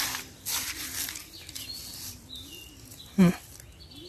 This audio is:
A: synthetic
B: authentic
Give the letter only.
B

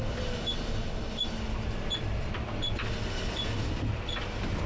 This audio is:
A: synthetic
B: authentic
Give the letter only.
B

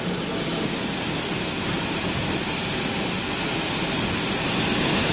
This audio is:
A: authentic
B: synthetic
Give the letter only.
A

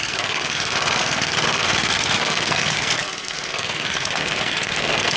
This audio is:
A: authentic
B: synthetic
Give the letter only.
B